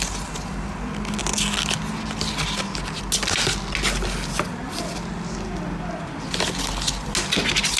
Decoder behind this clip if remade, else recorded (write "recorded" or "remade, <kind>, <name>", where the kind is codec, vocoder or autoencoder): recorded